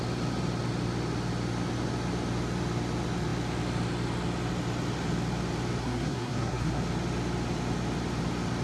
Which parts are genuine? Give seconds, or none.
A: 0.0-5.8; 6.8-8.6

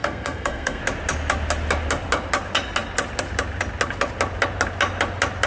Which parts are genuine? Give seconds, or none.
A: 0.8-5.5